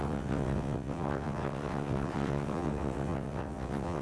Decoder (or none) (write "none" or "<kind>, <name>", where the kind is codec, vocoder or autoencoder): vocoder, WaveNeXt